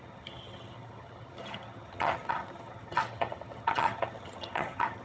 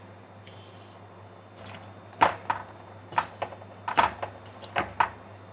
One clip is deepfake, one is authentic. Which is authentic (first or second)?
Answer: second